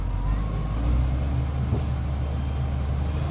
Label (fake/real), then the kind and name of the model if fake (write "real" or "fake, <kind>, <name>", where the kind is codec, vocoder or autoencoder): real